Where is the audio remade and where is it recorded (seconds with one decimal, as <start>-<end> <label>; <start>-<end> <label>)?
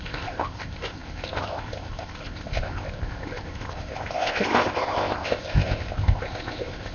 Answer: 0.0-6.9 remade